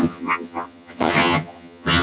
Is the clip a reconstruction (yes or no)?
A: yes